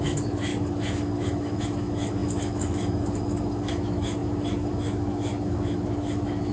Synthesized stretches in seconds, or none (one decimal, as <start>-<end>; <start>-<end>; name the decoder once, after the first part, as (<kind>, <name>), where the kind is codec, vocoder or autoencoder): 0.0-6.5 (autoencoder, DAC-VAE)